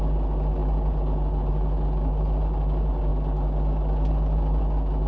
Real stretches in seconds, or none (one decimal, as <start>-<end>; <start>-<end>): 0.0-5.1

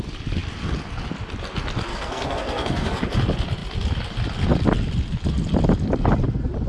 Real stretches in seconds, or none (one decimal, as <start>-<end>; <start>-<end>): 0.0-1.9; 3.0-6.7